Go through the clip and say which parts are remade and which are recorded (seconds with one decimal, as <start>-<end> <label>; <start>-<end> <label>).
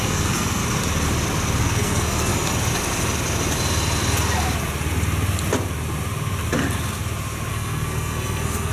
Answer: 0.0-0.6 remade; 0.6-1.6 recorded; 1.6-2.3 remade; 2.3-7.5 recorded; 7.5-8.7 remade